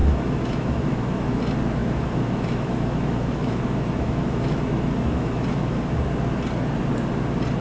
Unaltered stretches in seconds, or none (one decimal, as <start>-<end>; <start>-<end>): 1.4-1.8; 6.0-7.6